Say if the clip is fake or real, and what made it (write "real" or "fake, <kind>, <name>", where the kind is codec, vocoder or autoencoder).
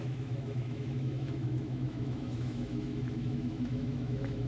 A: fake, autoencoder, DAC-VAE